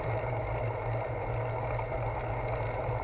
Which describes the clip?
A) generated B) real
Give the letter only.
B